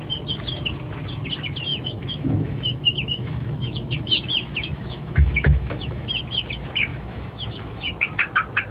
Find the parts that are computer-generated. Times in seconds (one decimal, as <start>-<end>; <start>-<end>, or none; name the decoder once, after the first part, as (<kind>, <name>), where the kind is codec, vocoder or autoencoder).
1.7-6.2 (autoencoder, DAC-VAE); 6.9-7.9